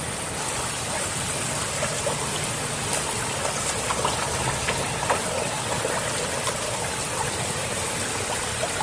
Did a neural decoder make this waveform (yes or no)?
no